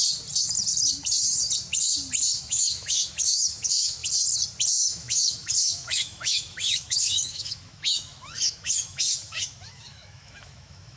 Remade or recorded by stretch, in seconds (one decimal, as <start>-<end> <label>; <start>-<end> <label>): 0.0-2.4 recorded; 2.4-4.0 remade; 4.0-4.7 recorded; 4.7-11.0 remade